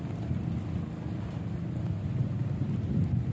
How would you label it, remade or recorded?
recorded